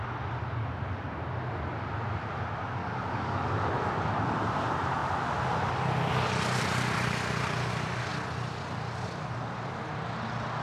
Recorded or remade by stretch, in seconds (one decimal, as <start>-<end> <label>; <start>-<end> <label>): 0.0-2.8 recorded; 2.8-3.5 remade; 3.5-10.6 recorded